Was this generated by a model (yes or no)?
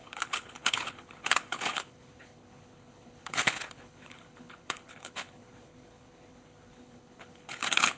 yes